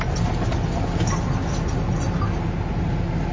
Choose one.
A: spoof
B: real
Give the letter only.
B